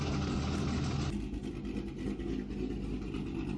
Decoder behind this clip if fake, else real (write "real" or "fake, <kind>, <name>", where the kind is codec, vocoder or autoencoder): real